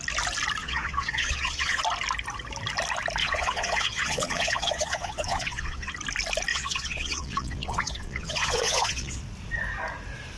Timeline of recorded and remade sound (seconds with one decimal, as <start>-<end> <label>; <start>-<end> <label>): 0.0-0.6 recorded; 0.6-1.8 remade; 1.8-3.2 recorded; 3.2-5.9 remade; 5.9-6.5 recorded; 6.5-9.2 remade; 9.2-10.4 recorded